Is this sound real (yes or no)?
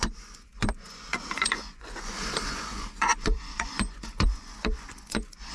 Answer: no